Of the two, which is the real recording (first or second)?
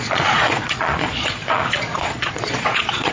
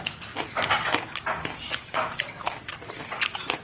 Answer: second